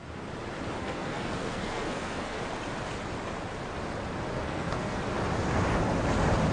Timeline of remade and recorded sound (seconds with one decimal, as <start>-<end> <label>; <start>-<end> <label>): 0.0-0.8 recorded; 0.8-2.4 remade; 2.4-4.3 recorded; 4.3-5.0 remade; 5.0-6.5 recorded